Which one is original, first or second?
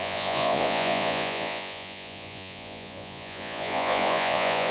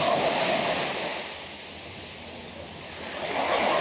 second